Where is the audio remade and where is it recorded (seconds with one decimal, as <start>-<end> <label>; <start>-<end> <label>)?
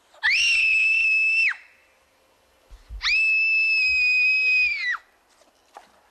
0.0-6.1 recorded